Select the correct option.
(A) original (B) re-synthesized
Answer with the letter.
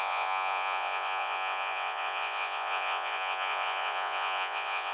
B